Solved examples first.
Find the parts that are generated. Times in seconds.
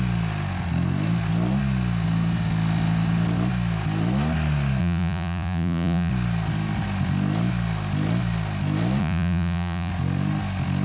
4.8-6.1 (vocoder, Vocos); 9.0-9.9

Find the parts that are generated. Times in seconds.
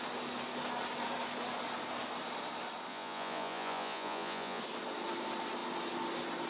2.9-4.6 (vocoder, Vocos)